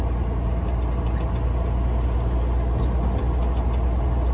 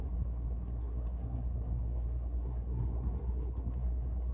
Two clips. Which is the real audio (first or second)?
first